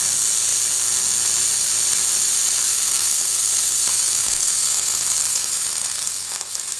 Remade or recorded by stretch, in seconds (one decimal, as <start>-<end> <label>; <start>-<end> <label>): 0.0-2.7 recorded; 2.7-5.5 remade; 5.5-5.9 recorded; 5.9-6.8 remade